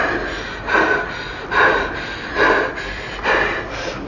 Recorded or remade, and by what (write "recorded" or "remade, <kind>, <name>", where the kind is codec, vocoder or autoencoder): remade, vocoder, BigVGAN v2